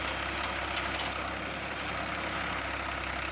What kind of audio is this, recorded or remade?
recorded